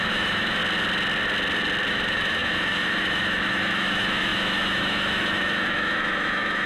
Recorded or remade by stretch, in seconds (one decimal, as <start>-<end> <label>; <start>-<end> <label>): 0.0-0.6 remade; 0.6-1.9 recorded; 1.9-6.7 remade